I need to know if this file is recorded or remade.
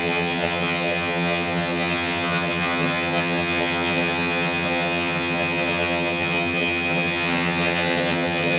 remade